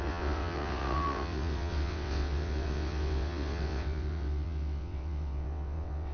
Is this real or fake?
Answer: fake